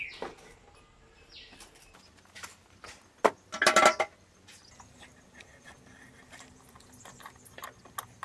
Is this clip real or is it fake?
real